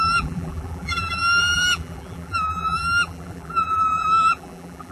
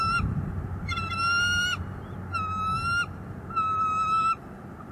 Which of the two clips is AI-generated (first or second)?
first